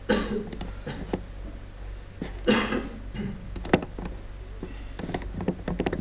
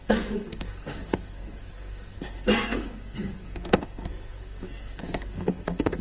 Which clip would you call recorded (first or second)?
first